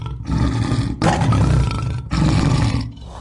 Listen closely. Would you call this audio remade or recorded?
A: recorded